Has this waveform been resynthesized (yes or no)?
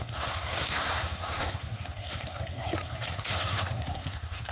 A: yes